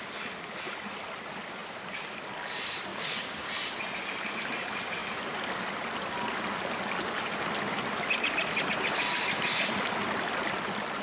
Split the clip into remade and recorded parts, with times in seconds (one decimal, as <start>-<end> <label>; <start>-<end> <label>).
0.0-2.9 recorded; 2.9-3.5 remade; 3.5-11.0 recorded